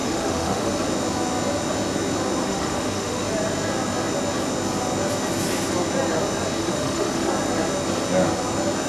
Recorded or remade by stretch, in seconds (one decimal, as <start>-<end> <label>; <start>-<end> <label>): 0.0-0.7 remade; 0.7-2.4 recorded; 2.4-3.2 remade; 3.2-6.6 recorded; 6.6-7.3 remade; 7.3-8.9 recorded